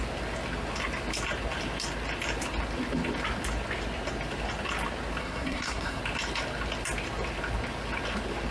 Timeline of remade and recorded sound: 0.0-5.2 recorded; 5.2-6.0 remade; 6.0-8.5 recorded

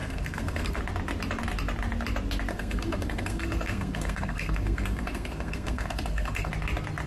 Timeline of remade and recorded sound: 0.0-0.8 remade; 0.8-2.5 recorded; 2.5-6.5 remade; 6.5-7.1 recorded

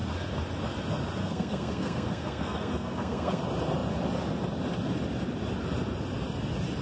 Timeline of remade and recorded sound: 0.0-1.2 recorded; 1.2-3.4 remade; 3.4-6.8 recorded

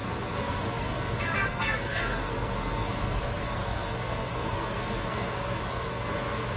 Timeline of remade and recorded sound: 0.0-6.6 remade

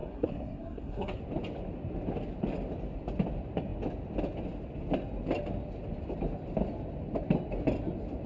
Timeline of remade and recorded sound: 0.0-1.2 remade; 1.2-8.3 recorded

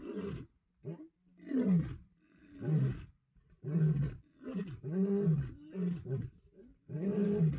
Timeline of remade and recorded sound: 0.0-7.6 recorded